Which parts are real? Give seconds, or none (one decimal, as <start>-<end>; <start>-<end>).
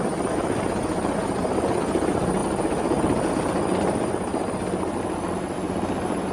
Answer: 0.0-6.3